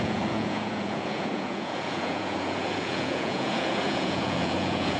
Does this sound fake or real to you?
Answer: fake